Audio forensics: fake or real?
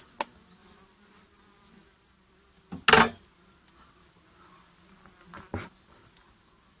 real